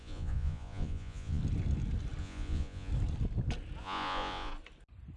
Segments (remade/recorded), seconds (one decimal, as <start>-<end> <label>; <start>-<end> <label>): 0.0-1.4 remade; 1.4-2.2 recorded; 2.2-2.9 remade; 2.9-3.8 recorded; 3.8-4.5 remade; 4.5-5.2 recorded